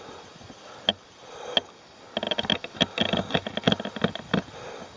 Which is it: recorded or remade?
recorded